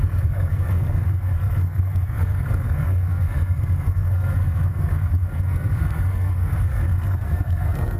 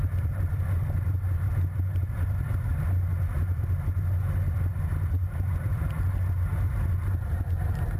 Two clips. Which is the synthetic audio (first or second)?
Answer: first